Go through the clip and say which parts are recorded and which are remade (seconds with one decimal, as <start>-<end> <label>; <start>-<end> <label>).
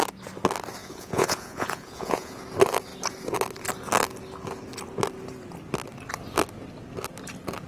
0.0-0.8 recorded; 0.8-2.4 remade; 2.4-7.7 recorded